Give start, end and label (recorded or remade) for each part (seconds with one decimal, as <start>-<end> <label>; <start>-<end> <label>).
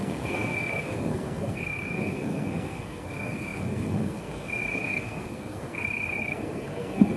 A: 0.0-7.2 remade